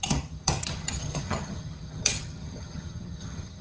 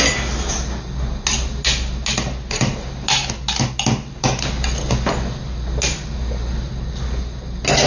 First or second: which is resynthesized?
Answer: first